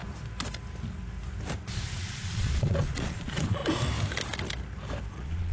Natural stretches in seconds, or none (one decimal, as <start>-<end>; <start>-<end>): 0.0-2.0; 3.6-5.1